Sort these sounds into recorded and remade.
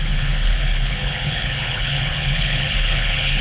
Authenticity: remade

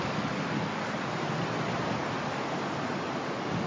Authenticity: recorded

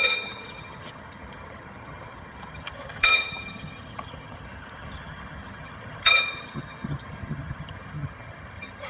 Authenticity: remade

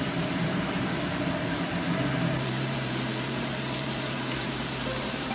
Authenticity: remade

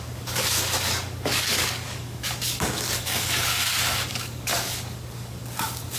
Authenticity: remade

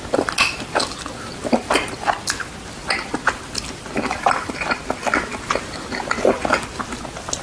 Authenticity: recorded